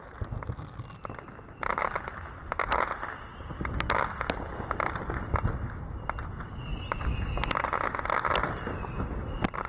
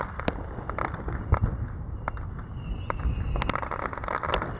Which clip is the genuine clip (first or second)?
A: first